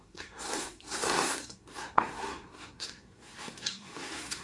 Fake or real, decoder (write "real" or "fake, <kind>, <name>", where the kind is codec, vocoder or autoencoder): fake, codec, SNAC